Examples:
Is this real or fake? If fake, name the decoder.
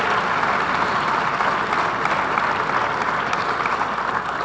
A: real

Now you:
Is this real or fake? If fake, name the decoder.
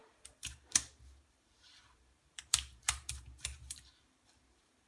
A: fake, vocoder, BigVGAN v2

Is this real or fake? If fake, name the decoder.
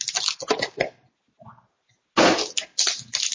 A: real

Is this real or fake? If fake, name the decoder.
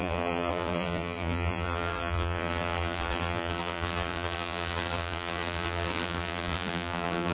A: fake, vocoder, BigVGAN v2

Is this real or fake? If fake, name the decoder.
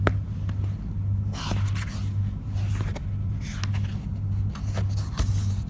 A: real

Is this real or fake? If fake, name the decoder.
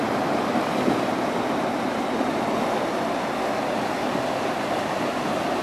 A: fake, vocoder, BigVGAN v2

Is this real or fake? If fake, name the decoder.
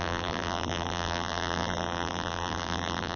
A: fake, vocoder, BigVGAN v2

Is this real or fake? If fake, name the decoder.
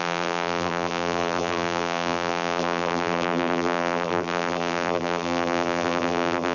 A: fake, vocoder, BigVGAN v2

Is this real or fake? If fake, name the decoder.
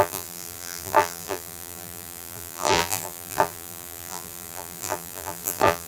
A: fake, vocoder, BigVGAN v2